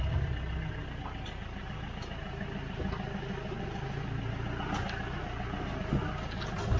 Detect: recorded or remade recorded